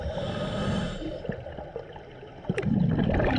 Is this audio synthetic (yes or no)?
no